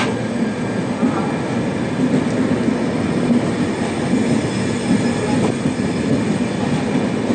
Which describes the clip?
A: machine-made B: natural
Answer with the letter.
B